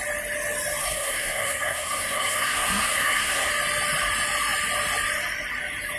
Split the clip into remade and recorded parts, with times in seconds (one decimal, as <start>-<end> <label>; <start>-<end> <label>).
0.0-0.8 recorded; 0.8-3.5 remade; 3.5-6.0 recorded